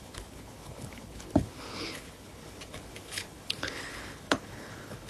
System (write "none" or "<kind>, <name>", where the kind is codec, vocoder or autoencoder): codec, HILCodec